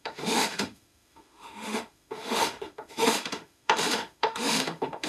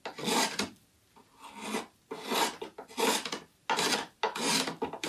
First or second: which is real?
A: second